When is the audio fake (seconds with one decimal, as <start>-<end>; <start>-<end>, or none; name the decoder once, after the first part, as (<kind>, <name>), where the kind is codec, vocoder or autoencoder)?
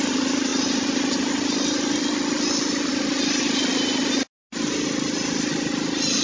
none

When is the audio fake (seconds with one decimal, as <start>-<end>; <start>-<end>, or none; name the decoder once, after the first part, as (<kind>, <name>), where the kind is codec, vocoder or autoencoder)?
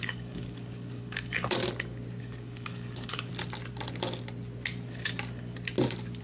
0.0-1.6 (codec, DAC); 2.2-3.3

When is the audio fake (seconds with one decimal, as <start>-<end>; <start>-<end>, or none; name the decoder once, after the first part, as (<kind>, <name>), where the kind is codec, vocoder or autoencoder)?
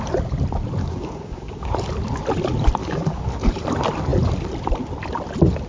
0.8-1.7 (codec, DAC); 2.8-3.4